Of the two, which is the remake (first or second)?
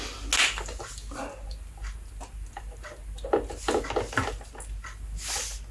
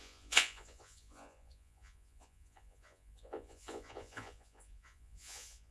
second